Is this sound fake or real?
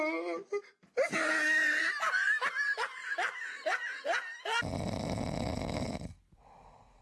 real